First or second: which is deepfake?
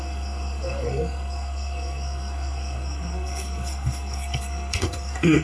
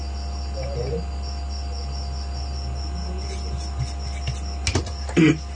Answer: first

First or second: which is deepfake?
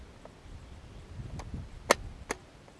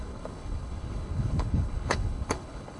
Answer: second